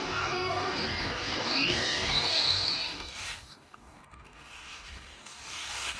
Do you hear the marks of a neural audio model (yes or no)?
yes